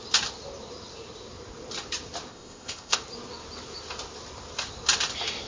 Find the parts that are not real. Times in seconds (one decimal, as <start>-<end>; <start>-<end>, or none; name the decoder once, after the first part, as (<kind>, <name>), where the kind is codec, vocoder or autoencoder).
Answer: 2.3-3.0 (codec, ZipCodec)